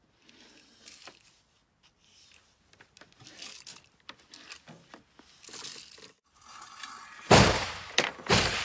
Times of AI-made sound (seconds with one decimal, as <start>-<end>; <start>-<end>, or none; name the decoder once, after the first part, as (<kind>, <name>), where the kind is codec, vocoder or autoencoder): none